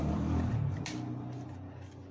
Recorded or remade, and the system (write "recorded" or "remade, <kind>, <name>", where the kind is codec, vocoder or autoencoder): recorded